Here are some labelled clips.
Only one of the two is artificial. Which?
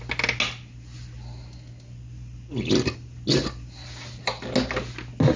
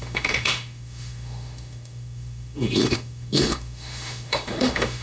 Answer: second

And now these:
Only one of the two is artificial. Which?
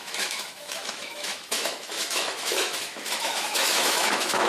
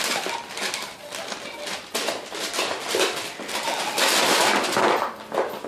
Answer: first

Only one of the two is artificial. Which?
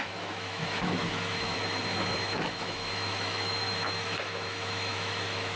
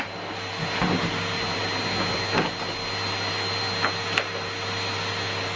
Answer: first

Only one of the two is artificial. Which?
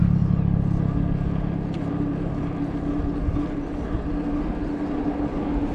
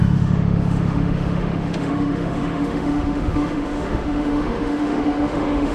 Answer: second